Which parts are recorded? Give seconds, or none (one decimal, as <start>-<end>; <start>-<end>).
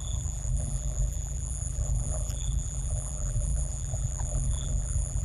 none